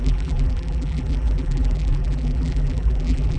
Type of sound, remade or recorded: remade